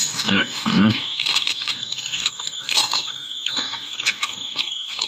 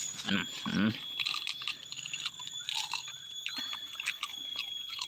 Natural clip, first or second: second